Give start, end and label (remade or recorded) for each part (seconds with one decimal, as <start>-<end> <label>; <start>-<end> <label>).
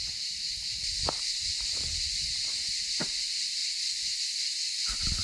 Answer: 0.0-5.2 recorded